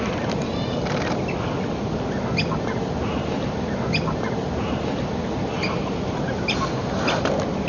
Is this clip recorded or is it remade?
recorded